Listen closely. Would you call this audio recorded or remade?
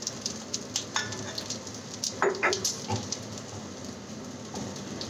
recorded